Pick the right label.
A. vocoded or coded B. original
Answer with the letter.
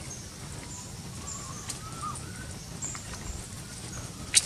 B